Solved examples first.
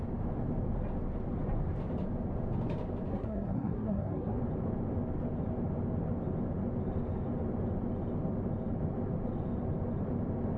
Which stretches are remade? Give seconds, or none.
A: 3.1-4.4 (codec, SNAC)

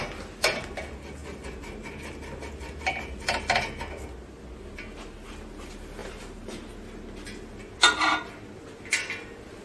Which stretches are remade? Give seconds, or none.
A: 6.0-6.7 (vocoder, BigVGAN v2)

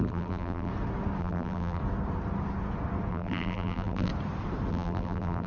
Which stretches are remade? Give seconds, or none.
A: 0.0-0.7 (vocoder, BigVGAN v2); 1.2-1.8; 3.1-4.1; 4.7-5.5

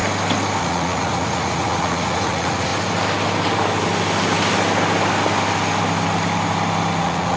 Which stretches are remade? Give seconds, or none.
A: 0.6-2.7 (vocoder, Vocos); 7.0-7.4